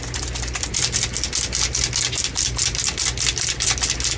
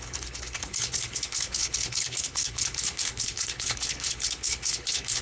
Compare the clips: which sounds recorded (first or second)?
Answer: first